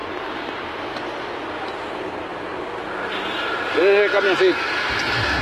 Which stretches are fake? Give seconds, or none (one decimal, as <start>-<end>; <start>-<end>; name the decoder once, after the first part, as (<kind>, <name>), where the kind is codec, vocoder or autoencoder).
0.0-0.8 (vocoder, BigVGAN v2)